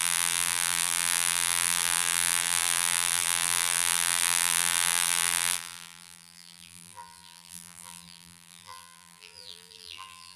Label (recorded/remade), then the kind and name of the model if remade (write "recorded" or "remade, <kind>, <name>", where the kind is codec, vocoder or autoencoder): remade, vocoder, BigVGAN v2